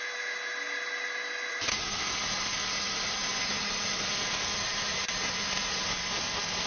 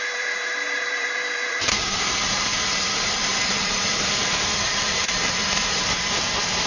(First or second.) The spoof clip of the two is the second